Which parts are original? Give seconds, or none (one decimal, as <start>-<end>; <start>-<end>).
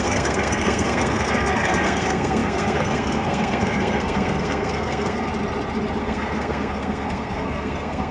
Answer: 5.3-6.0